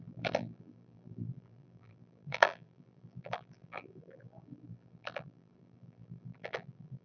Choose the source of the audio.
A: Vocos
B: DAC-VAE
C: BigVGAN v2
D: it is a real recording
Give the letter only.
C